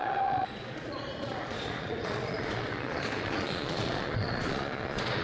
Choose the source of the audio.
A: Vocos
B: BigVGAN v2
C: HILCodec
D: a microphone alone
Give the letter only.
A